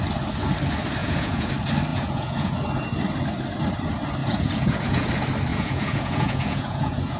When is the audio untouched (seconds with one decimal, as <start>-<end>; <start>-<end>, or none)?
0.0-1.0; 1.5-1.9; 2.5-4.2; 5.1-5.5